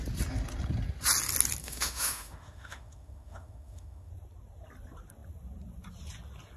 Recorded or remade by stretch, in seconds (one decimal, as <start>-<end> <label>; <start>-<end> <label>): 0.0-1.6 recorded; 1.6-4.1 remade; 4.1-6.6 recorded